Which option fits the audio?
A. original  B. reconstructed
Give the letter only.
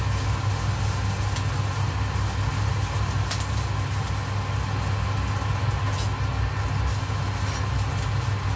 A